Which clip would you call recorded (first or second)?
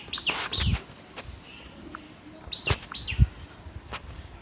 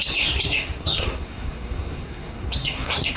first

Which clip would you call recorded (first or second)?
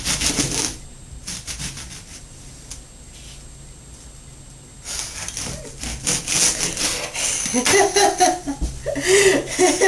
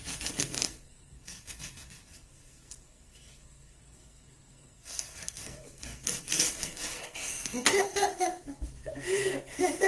first